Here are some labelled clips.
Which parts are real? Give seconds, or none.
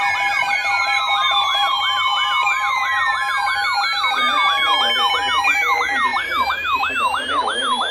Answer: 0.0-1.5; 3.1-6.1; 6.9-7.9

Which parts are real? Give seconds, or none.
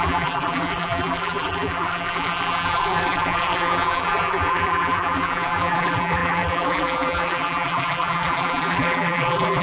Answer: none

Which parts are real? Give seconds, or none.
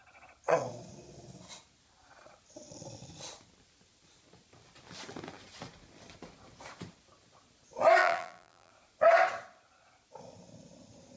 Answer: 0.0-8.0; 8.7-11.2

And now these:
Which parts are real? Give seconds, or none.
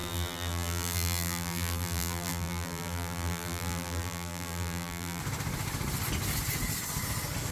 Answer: 5.2-7.5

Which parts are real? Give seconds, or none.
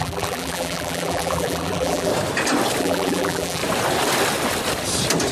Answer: 2.1-2.8; 3.6-5.3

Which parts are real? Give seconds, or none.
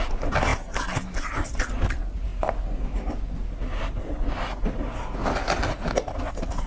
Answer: 0.0-6.7